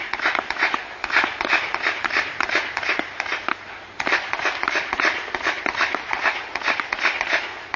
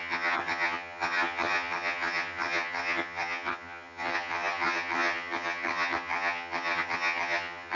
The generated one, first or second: second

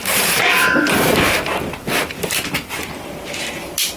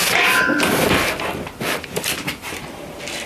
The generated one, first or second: first